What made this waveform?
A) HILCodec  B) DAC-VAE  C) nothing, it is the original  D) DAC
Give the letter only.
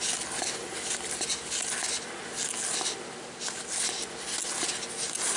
C